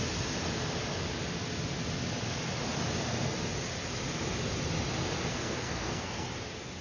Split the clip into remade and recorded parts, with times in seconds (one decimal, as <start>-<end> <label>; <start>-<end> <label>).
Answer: 0.0-5.3 recorded; 5.3-6.3 remade; 6.3-6.8 recorded